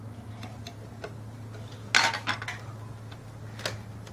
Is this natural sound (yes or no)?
yes